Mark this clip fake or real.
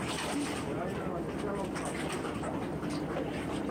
real